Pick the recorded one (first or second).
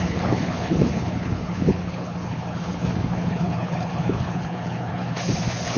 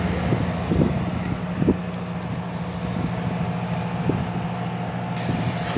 second